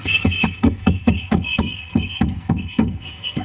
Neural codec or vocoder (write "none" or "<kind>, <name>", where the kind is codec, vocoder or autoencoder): codec, SNAC